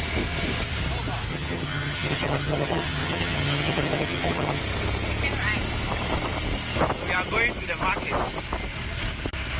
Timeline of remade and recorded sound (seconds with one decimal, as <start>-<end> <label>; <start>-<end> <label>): 0.0-1.3 recorded; 1.3-4.6 remade; 4.6-9.6 recorded